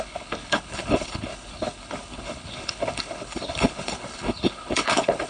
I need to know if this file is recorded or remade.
remade